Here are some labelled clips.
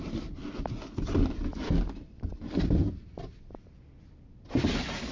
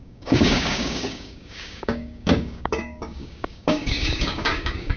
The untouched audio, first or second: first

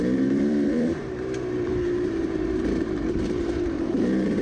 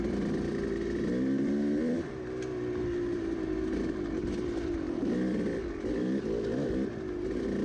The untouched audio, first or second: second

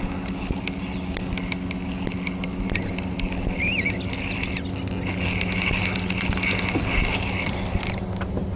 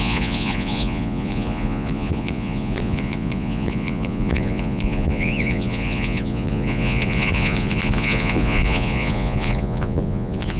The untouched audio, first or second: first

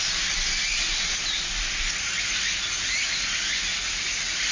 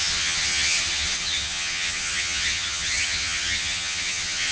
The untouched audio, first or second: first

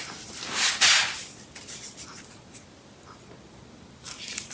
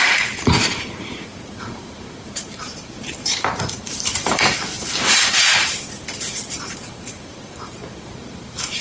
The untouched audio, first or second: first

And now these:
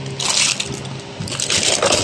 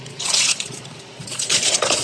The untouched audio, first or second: first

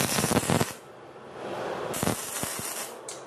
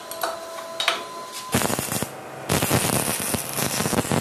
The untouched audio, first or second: second